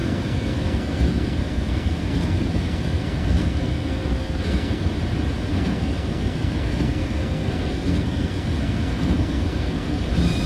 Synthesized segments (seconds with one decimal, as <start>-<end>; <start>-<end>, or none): 0.0-4.9; 5.5-10.1